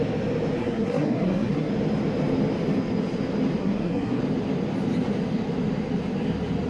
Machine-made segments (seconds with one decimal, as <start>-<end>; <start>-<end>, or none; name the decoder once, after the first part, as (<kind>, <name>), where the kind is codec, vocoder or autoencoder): 0.6-1.7 (codec, SNAC); 3.6-4.2